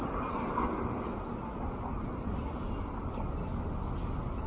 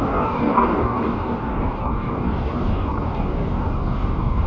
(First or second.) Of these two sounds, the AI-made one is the second